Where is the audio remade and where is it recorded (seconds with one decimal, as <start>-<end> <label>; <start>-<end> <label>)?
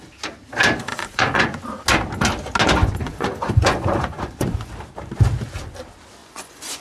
0.0-0.9 recorded; 0.9-1.6 remade; 1.6-2.8 recorded; 2.8-4.7 remade; 4.7-6.2 recorded; 6.2-6.8 remade